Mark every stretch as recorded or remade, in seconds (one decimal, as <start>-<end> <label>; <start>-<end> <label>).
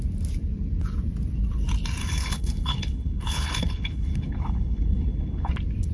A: 0.0-2.0 recorded; 2.0-5.5 remade; 5.5-5.9 recorded